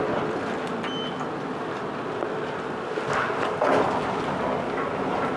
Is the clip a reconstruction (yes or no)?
no